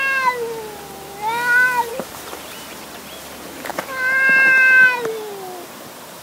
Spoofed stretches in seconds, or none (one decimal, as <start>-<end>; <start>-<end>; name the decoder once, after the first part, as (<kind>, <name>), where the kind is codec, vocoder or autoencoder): 1.9-3.7 (vocoder, BigVGAN v2)